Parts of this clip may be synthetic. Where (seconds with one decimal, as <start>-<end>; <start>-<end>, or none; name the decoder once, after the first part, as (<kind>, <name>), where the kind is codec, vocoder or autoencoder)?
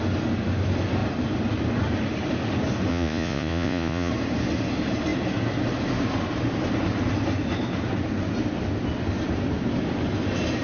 2.9-4.1 (vocoder, Vocos)